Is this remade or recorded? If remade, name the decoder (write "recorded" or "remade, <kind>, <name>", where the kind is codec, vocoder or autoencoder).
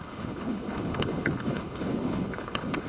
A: remade, codec, HILCodec